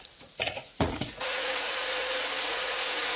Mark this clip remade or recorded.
remade